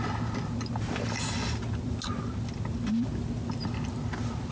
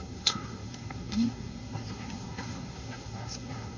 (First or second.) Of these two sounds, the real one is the first